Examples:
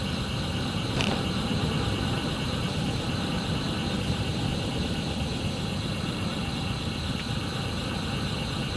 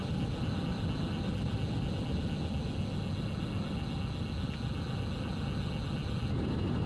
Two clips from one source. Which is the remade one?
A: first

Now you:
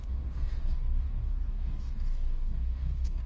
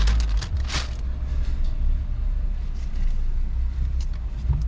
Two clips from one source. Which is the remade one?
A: first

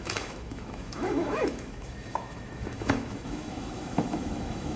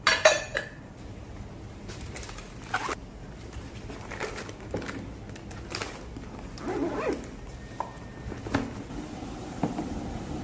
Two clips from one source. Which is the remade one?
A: first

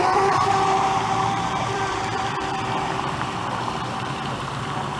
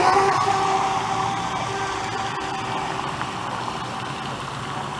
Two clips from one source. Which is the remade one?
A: first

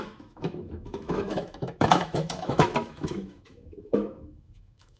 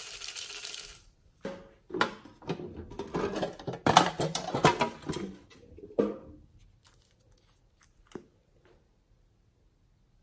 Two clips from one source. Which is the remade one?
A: first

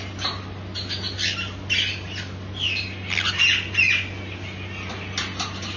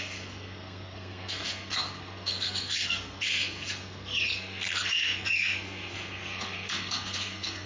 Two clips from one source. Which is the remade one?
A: second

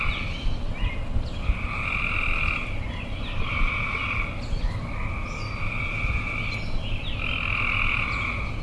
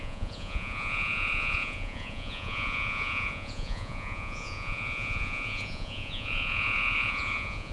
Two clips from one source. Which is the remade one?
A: second